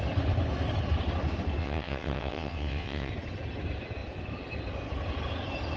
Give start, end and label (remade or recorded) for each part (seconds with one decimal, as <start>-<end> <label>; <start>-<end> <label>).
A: 0.0-1.6 recorded; 1.6-3.1 remade; 3.1-5.8 recorded